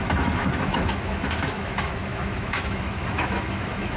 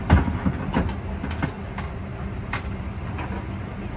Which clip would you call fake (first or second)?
first